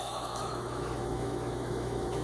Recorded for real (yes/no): no